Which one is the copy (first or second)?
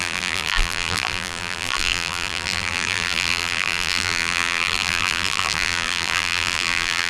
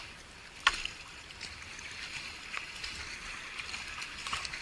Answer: first